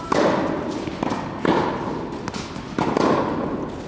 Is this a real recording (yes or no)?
yes